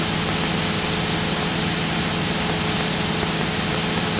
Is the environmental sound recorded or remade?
recorded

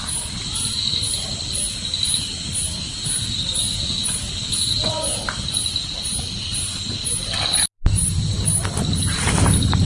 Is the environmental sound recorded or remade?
recorded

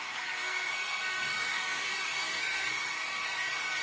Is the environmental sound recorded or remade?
remade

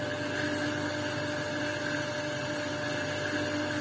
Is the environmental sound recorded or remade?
recorded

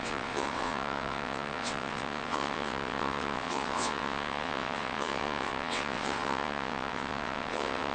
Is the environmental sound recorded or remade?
remade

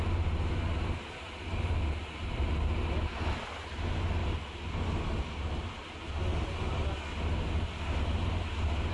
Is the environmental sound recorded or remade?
recorded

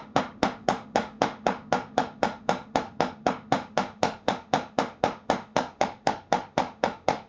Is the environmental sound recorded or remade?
remade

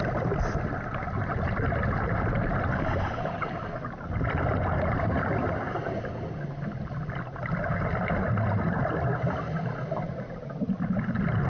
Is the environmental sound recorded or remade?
recorded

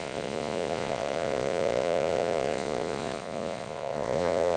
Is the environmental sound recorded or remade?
remade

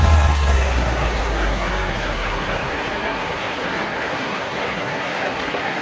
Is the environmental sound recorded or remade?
remade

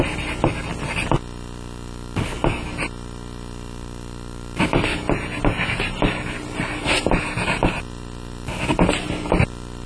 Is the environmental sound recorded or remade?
recorded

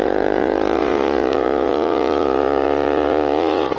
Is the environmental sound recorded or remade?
remade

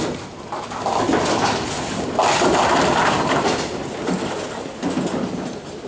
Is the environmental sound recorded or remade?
recorded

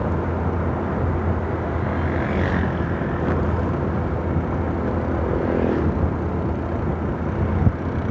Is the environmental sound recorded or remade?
recorded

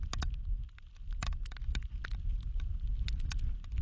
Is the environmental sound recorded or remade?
recorded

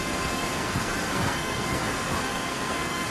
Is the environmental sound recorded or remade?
remade